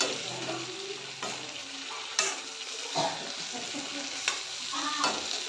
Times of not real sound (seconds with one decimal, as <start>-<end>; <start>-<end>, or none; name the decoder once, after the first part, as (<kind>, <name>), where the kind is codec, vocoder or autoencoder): 1.6-2.2 (vocoder, BigVGAN v2)